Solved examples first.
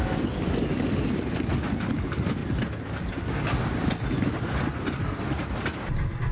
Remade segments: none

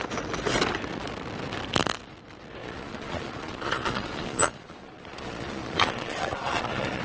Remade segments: 2.6-7.0